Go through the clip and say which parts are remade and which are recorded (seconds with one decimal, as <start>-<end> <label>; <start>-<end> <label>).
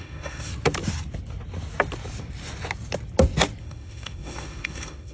0.0-0.5 remade; 0.5-3.6 recorded; 3.6-5.1 remade